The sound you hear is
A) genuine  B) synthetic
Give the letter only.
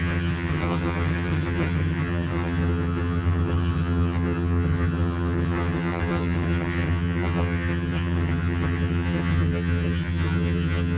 B